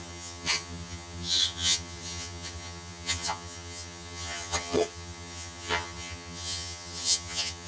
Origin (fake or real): fake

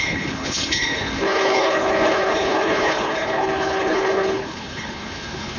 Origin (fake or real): fake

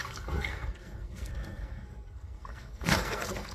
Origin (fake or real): fake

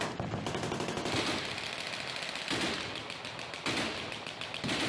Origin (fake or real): real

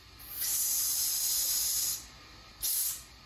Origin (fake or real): real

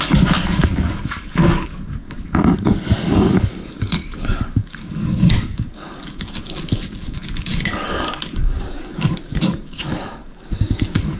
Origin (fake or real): fake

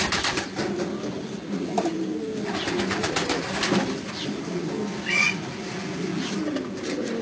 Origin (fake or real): real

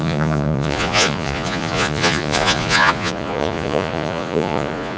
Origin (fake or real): fake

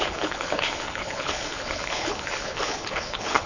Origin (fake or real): fake